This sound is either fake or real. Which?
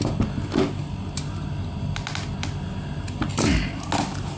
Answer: real